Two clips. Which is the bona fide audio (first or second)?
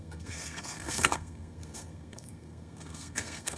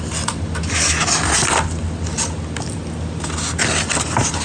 second